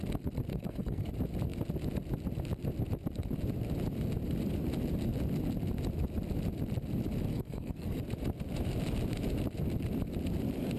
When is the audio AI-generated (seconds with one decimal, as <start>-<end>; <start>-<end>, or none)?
0.5-1.1; 7.3-8.0